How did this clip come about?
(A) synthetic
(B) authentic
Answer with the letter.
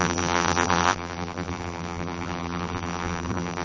A